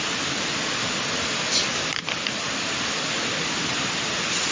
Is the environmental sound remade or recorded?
recorded